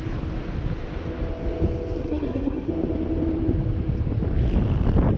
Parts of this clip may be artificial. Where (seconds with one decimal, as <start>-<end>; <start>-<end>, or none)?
2.0-2.7